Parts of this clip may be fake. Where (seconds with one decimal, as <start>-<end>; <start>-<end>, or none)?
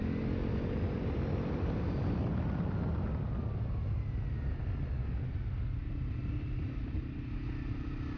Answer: 0.0-2.3; 6.5-8.2